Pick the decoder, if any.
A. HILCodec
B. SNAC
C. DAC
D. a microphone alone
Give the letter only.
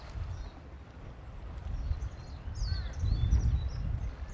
D